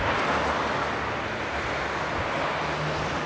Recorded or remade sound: recorded